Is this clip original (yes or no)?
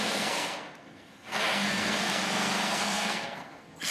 no